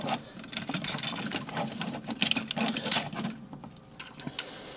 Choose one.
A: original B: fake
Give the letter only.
A